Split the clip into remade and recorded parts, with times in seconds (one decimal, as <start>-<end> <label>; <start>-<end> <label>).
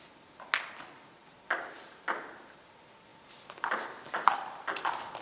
0.0-1.2 recorded; 1.2-1.8 remade; 1.8-5.2 recorded